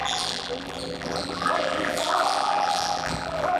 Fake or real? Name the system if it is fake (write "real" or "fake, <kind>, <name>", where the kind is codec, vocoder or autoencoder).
fake, vocoder, BigVGAN v2